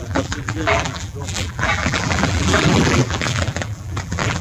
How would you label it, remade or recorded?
remade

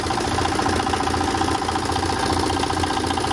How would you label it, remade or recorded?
recorded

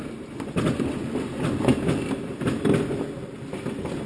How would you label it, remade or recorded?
recorded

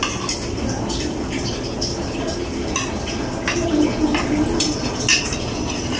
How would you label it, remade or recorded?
recorded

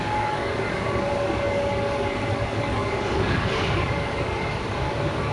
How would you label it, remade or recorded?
remade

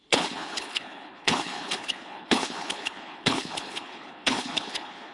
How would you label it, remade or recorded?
remade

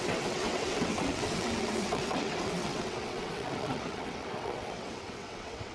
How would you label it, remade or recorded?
remade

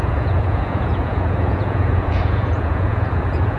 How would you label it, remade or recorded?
remade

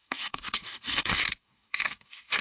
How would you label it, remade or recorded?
remade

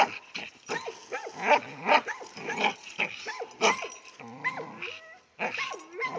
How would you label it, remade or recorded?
recorded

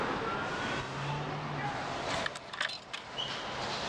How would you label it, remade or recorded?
recorded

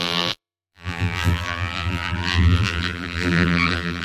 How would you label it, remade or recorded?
remade